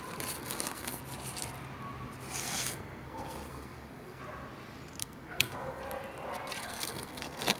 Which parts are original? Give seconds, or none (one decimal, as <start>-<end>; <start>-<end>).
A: 0.0-0.4; 1.0-2.4; 4.2-5.0; 5.8-6.6